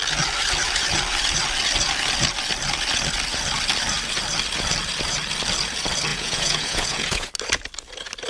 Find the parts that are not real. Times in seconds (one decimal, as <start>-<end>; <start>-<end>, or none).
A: 6.1-7.3